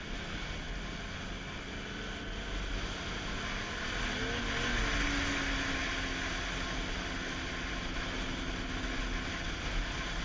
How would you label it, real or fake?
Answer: real